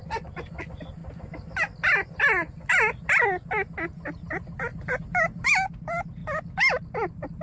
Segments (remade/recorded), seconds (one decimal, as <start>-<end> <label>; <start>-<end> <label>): 0.0-4.7 recorded; 4.7-5.5 remade; 5.5-7.4 recorded